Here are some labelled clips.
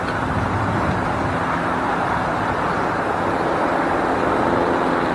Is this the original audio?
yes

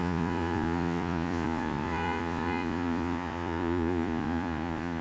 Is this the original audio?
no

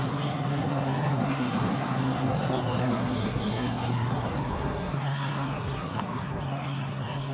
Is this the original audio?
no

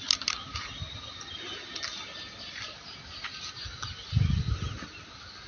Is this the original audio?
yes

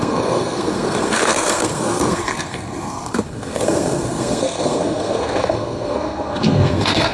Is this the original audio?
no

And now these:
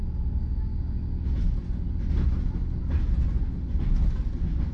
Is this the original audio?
yes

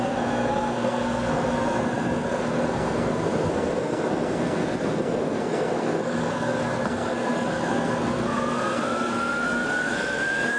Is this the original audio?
no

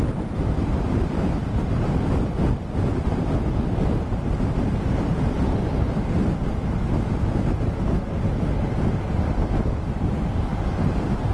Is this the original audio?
yes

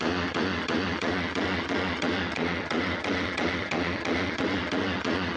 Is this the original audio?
no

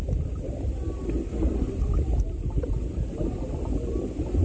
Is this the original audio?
yes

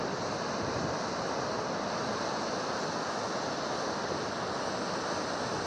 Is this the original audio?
yes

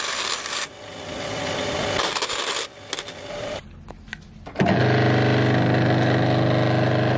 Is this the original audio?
yes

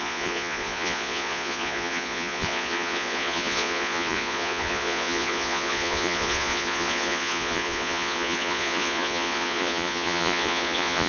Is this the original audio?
no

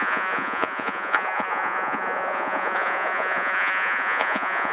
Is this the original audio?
no